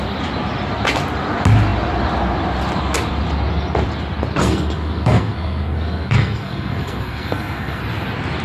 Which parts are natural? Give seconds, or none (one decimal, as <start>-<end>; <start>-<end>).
0.0-4.4; 7.8-8.4